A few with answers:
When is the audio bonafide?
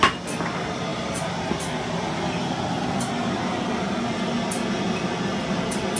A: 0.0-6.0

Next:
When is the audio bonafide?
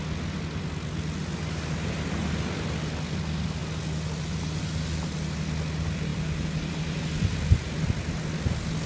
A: 0.0-8.9